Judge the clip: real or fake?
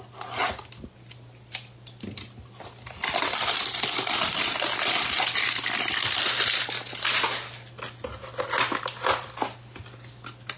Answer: real